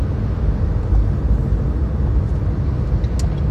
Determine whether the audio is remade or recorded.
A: recorded